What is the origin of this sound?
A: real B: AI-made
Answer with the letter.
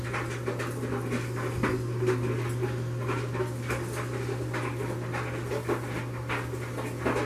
A